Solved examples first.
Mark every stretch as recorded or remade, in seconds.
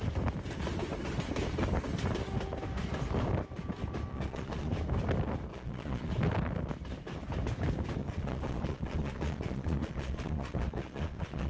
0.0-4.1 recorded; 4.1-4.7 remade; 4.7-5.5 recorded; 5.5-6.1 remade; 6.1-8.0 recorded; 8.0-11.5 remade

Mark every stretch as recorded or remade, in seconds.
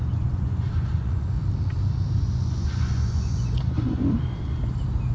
0.0-1.4 remade; 1.4-2.2 recorded; 2.2-4.0 remade; 4.0-5.1 recorded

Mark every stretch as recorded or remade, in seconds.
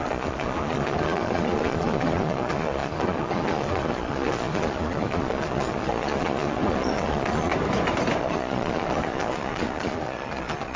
0.0-7.5 remade; 7.5-8.2 recorded; 8.2-10.8 remade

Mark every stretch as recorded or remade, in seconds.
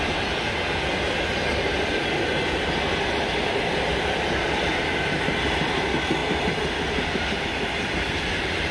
0.0-8.7 recorded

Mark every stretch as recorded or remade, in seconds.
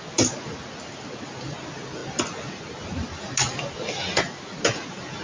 0.0-5.2 recorded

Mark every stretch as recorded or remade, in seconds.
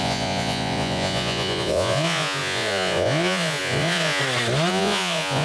0.0-4.2 remade; 4.2-4.7 recorded; 4.7-5.4 remade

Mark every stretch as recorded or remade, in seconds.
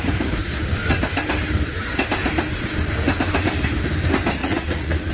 0.0-4.4 recorded; 4.4-5.1 remade